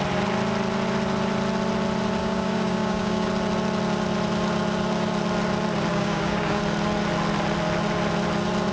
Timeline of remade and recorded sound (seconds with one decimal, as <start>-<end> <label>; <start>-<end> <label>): 0.0-2.2 recorded; 2.2-3.3 remade; 3.3-5.9 recorded; 5.9-6.6 remade; 6.6-8.7 recorded